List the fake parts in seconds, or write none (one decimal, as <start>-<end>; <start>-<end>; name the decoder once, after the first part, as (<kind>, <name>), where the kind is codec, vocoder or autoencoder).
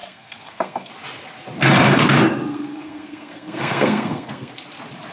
0.0-0.9 (codec, SNAC); 2.5-4.5